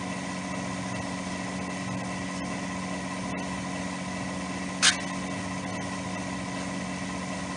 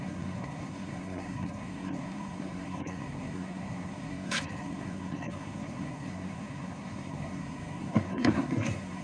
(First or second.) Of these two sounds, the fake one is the second